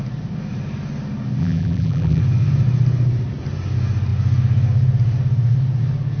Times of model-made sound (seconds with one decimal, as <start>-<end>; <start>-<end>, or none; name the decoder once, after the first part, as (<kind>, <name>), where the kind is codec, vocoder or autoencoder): 1.4-2.2 (vocoder, BigVGAN v2)